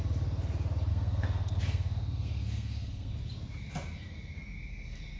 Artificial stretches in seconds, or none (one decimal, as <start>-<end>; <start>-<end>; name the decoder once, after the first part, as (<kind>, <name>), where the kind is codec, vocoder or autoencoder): 0.9-3.1 (codec, SNAC)